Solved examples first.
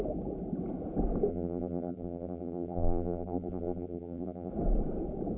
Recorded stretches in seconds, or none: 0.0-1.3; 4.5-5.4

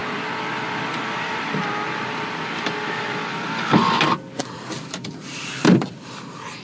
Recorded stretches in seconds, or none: 3.8-4.4